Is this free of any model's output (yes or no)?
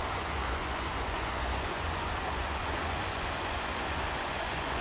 no